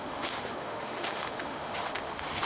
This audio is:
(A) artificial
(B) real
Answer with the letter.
A